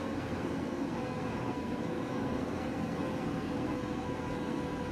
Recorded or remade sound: remade